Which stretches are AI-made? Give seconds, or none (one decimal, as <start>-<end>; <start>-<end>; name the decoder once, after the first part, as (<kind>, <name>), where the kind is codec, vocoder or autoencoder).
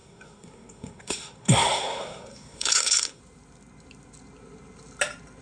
0.0-3.2 (codec, SNAC)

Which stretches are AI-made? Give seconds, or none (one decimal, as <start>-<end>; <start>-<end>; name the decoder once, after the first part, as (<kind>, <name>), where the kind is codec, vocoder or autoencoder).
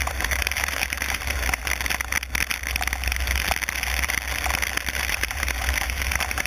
0.0-1.6 (vocoder, BigVGAN v2); 4.9-6.5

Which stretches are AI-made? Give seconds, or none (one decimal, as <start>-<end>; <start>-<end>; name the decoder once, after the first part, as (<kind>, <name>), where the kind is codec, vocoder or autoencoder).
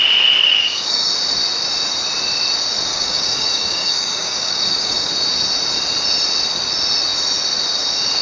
0.4-1.1 (codec, DAC); 2.9-5.1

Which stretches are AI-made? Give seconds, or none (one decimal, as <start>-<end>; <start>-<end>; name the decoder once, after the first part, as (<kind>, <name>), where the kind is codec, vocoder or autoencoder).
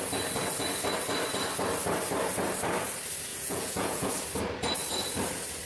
3.3-4.1 (vocoder, Vocos)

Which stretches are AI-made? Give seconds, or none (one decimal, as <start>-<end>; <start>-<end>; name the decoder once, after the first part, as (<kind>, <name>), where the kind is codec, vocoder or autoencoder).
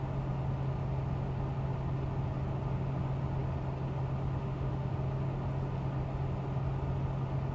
4.4-4.9 (autoencoder, DAC-VAE)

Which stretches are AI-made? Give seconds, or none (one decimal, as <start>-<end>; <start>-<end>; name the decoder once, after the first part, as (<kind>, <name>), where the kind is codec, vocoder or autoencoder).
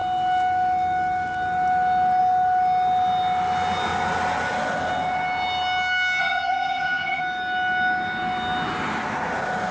6.2-7.2 (vocoder, HiFi-GAN)